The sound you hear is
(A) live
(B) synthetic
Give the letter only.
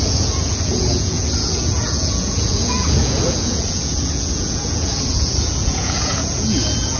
B